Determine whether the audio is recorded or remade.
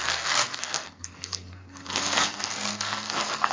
remade